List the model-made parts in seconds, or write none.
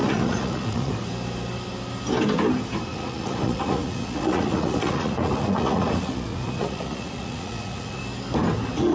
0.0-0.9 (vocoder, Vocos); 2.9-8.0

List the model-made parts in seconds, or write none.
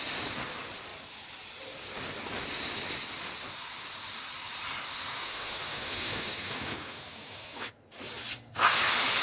5.2-7.7 (autoencoder, DAC-VAE)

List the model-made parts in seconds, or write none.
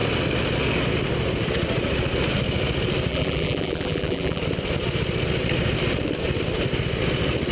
3.1-4.4 (vocoder, BigVGAN v2)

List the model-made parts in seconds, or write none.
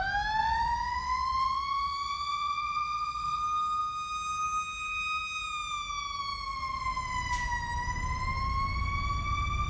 0.4-3.4 (vocoder, Vocos)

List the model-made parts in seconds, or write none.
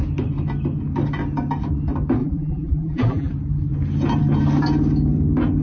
2.2-3.3 (vocoder, BigVGAN v2)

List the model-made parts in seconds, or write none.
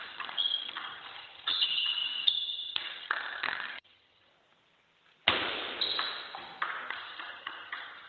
0.0-4.3 (vocoder, HiFi-GAN); 6.9-8.1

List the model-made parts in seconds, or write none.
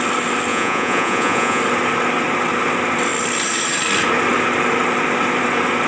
0.5-1.6 (vocoder, Vocos)